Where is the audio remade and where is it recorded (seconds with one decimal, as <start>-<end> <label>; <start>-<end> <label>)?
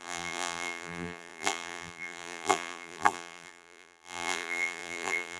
0.0-5.4 remade